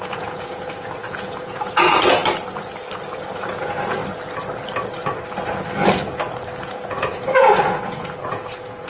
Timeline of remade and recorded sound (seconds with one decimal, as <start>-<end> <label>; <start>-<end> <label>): 0.0-2.2 remade; 2.2-3.1 recorded; 3.1-4.0 remade; 4.0-6.6 recorded; 6.6-8.9 remade